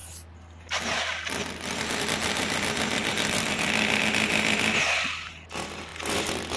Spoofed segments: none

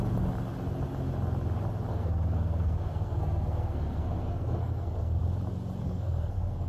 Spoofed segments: 1.9-5.2 (codec, SNAC); 5.8-6.7

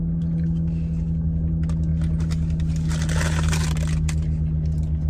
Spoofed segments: none

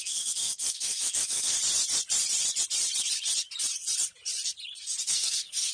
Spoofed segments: 0.0-1.6 (codec, SNAC); 5.0-5.7

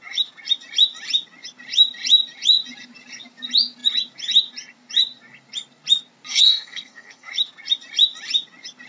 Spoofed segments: 6.3-7.3 (codec, SNAC)

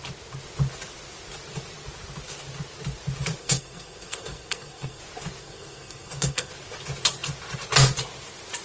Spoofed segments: 3.4-5.0 (codec, SNAC); 5.4-6.5

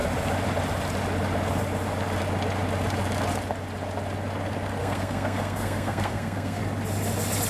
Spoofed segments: 4.8-6.6 (codec, SNAC)